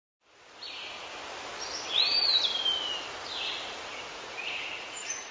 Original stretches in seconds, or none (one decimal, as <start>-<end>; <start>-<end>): 0.0-4.1